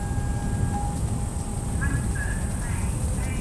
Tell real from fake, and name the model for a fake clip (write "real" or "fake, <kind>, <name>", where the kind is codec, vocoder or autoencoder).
real